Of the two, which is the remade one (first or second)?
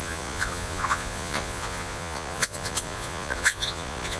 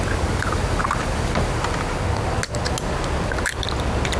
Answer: first